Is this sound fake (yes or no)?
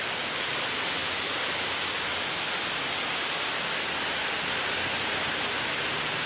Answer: no